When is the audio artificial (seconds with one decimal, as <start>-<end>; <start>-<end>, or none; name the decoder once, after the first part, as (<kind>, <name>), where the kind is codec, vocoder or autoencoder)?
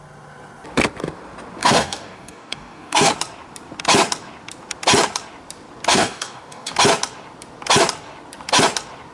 1.6-3.1 (codec, DAC); 5.9-6.7